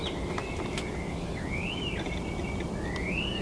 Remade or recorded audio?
recorded